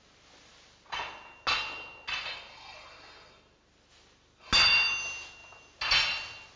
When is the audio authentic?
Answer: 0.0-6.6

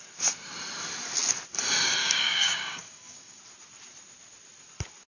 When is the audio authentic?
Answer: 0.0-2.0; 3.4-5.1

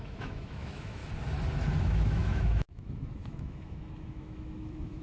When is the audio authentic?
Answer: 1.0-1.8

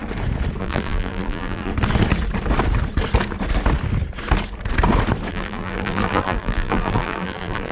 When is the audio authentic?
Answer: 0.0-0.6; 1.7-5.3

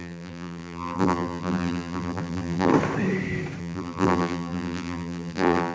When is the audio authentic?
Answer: 2.7-3.6